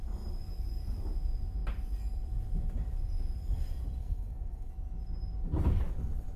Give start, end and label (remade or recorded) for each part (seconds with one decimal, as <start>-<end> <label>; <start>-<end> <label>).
0.0-4.0 recorded; 4.0-4.7 remade; 4.7-6.4 recorded